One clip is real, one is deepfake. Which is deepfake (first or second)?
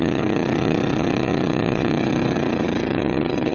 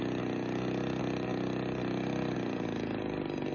first